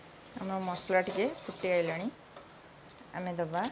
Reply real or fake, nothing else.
real